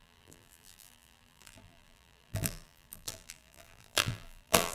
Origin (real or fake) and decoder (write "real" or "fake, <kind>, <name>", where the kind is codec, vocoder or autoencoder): fake, vocoder, BigVGAN v2